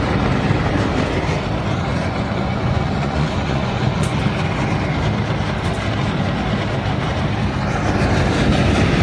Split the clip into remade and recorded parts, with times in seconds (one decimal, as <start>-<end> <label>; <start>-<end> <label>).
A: 0.0-1.9 recorded; 1.9-4.2 remade; 4.2-9.0 recorded